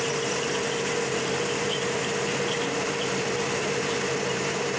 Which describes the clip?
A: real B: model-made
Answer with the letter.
B